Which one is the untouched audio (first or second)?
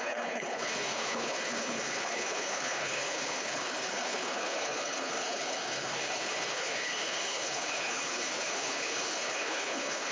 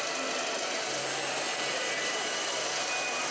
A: second